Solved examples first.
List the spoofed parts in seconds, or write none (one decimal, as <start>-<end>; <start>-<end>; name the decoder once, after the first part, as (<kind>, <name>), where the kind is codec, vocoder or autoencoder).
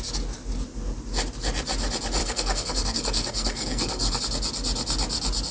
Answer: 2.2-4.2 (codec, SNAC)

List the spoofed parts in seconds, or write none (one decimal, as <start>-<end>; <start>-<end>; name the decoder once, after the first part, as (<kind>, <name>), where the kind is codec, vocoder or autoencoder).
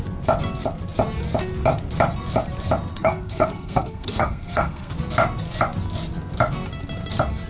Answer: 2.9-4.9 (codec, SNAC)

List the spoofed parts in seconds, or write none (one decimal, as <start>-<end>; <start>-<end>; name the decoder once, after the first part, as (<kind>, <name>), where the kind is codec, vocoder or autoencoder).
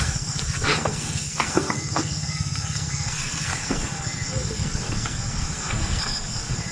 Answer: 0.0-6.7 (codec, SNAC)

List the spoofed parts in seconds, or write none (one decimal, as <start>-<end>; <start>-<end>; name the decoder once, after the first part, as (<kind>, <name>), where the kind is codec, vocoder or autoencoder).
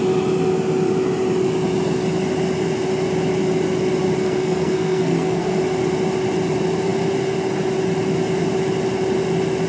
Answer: 4.2-5.6 (codec, SNAC)